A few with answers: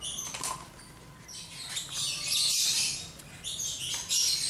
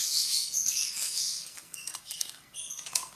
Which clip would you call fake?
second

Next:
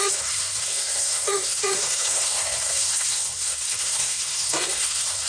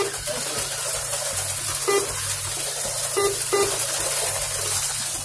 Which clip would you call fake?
first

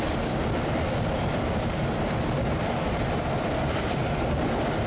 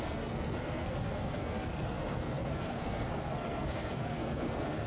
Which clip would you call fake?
second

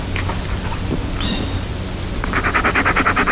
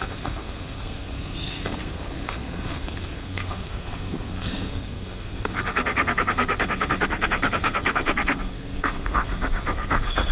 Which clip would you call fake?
second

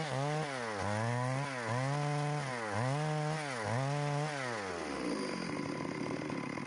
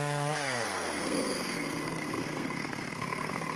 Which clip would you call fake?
second